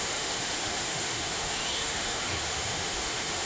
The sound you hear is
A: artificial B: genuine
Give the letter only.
A